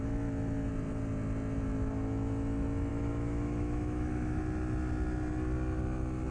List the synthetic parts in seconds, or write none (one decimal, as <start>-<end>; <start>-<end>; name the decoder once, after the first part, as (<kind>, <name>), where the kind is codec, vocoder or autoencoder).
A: 2.9-4.4 (autoencoder, DAC-VAE)